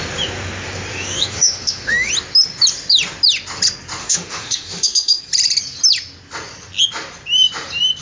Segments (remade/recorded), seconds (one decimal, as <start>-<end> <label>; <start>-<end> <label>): 0.0-0.9 recorded; 0.9-2.1 remade; 2.1-4.0 recorded; 4.0-5.2 remade; 5.2-8.0 recorded